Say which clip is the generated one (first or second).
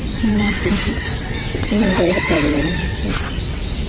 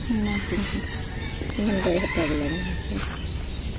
first